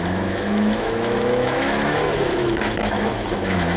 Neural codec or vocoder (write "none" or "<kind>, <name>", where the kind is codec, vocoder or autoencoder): autoencoder, DAC-VAE